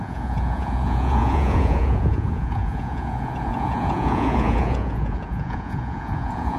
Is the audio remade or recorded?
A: remade